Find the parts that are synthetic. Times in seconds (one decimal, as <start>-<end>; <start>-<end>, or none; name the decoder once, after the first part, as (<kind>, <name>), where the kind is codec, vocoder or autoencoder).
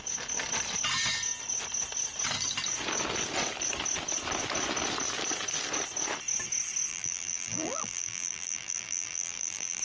6.9-9.8 (vocoder, BigVGAN v2)